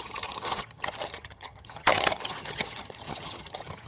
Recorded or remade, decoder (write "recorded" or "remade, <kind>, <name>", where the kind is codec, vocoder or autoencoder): remade, vocoder, HiFi-GAN